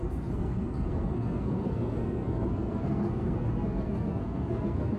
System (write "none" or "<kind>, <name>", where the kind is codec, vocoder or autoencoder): codec, SNAC